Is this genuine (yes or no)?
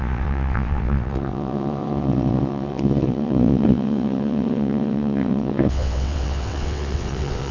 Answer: no